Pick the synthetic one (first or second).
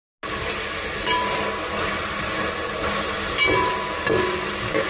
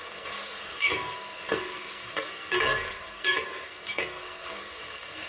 second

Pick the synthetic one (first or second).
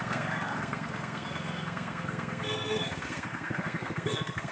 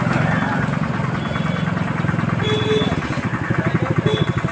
first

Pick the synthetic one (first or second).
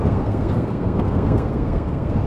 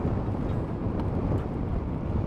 first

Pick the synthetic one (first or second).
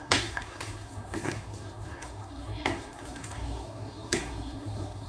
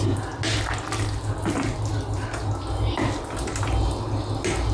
first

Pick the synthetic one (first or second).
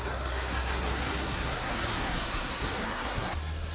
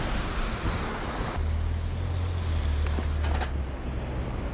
first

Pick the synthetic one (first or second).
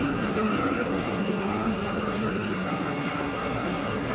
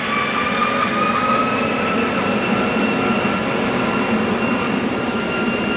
first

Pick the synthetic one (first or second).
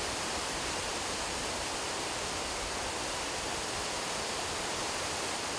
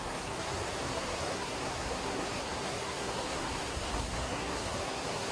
second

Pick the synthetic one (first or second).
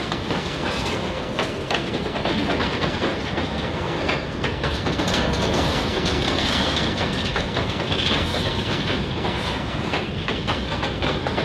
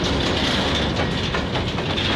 first